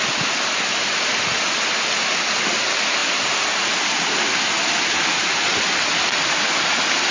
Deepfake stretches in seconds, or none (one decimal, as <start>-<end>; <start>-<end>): none